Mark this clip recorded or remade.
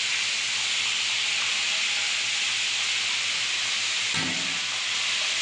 recorded